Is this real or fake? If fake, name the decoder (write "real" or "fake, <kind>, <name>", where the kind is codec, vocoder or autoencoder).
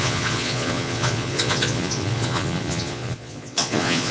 fake, vocoder, Vocos